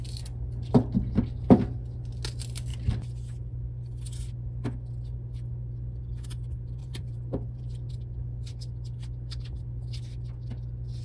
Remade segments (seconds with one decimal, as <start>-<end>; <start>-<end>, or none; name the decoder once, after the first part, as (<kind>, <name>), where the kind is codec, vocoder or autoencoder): 6.8-7.9 (vocoder, BigVGAN v2)